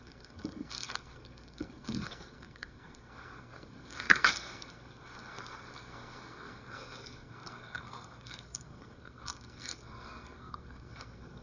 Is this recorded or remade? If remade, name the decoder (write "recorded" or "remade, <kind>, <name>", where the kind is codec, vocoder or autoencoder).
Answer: remade, codec, SNAC